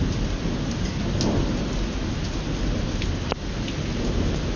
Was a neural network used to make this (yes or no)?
no